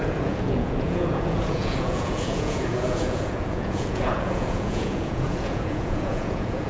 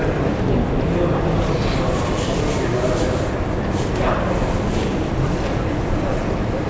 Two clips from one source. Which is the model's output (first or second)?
first